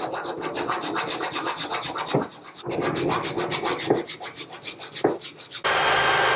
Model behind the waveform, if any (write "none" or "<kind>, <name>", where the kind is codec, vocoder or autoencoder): none